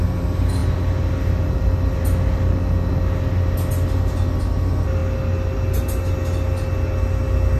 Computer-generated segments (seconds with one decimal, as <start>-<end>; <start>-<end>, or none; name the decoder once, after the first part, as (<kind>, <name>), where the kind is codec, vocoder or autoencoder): none